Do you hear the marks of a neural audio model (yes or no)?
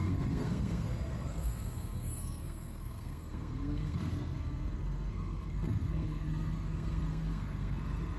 yes